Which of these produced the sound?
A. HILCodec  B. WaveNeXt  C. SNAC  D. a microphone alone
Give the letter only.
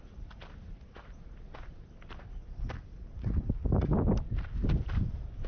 D